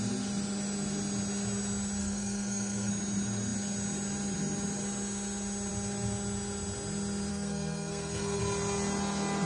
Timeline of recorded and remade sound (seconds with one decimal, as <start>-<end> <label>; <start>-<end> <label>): 0.0-2.0 recorded; 2.0-2.9 remade; 2.9-7.3 recorded; 7.3-8.4 remade; 8.4-9.5 recorded